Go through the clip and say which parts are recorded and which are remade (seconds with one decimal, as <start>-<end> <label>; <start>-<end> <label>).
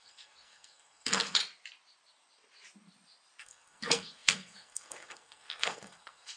0.0-1.4 remade; 1.4-3.4 recorded; 3.4-6.4 remade